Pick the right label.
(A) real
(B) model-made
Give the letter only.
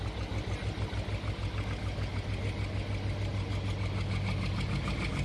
A